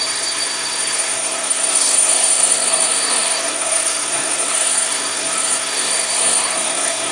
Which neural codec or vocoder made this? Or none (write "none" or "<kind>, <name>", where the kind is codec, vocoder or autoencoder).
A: codec, SNAC